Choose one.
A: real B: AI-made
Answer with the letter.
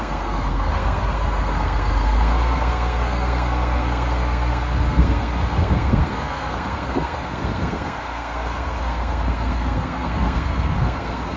B